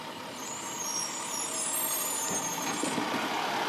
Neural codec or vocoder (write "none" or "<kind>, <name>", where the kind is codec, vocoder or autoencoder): none